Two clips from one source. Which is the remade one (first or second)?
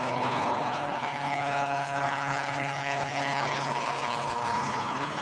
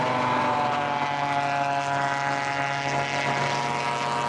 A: first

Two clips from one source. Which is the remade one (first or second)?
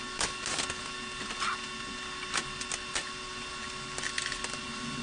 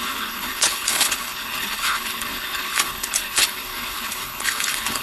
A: second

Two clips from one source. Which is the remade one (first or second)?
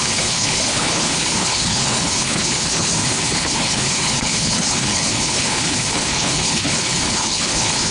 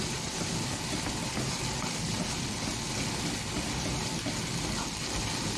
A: first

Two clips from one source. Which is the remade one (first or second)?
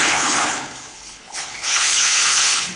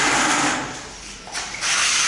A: first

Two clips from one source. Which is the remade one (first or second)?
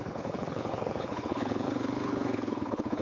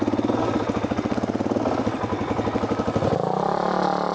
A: first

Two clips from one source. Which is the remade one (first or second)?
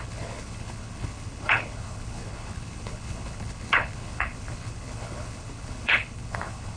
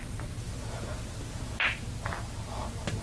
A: first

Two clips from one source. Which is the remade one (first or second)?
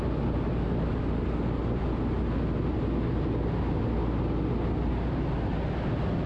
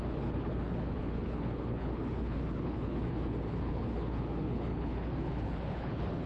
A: second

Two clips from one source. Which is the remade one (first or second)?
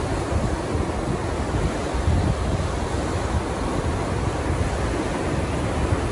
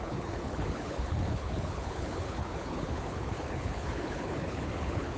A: second